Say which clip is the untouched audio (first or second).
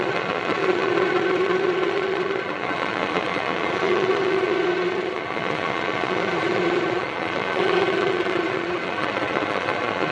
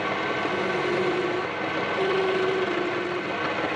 second